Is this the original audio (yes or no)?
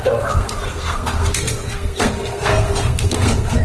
no